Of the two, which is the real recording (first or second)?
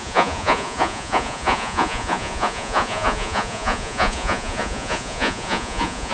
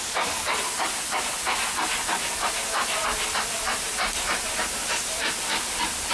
second